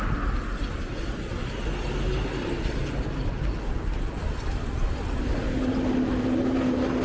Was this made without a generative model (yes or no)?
yes